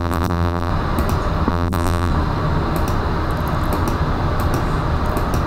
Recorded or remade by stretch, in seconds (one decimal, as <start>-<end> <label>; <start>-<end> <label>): 0.0-0.7 remade; 0.7-1.5 recorded; 1.5-2.1 remade; 2.1-5.5 recorded